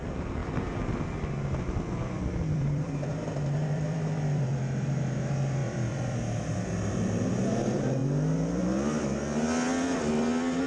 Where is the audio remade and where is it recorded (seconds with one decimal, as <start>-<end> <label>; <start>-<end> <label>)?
0.0-0.4 recorded; 0.4-3.1 remade; 3.1-3.6 recorded; 3.6-4.9 remade; 4.9-5.6 recorded; 5.6-6.9 remade; 6.9-10.7 recorded